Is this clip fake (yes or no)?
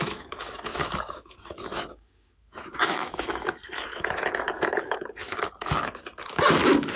yes